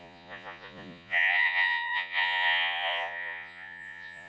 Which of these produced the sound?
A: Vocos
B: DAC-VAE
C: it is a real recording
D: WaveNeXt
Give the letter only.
A